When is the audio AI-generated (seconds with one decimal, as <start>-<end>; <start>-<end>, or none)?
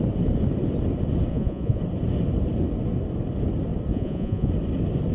1.3-1.8; 3.9-4.5